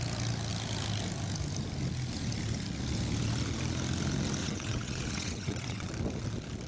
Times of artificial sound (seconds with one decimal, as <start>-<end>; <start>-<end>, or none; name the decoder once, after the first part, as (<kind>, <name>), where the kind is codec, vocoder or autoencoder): 4.4-5.9 (vocoder, WaveNeXt)